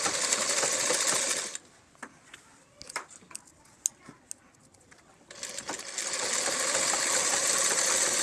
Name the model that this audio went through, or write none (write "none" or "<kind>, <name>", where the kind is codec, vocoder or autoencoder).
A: none